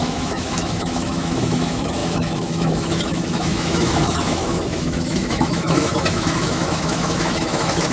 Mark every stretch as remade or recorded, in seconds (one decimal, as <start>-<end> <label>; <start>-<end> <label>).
0.0-7.9 remade